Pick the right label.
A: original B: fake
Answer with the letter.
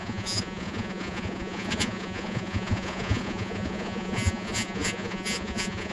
B